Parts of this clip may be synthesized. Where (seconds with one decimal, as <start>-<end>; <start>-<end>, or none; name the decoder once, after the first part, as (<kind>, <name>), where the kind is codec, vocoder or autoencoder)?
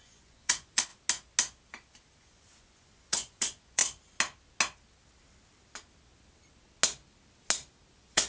0.0-0.9 (vocoder, Vocos); 2.2-3.8; 7.9-8.3